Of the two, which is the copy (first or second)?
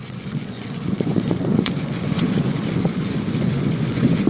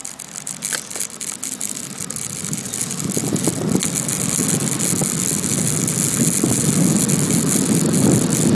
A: first